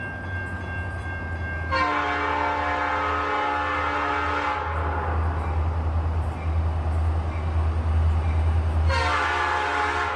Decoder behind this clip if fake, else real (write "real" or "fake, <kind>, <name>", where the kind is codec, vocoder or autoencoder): real